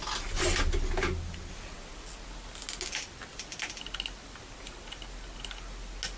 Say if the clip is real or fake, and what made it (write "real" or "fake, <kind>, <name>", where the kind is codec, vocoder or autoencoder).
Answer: real